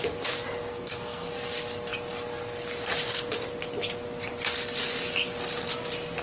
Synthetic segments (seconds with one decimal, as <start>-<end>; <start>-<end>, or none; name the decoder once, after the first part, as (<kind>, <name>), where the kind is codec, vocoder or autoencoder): 0.7-1.3 (codec, SNAC)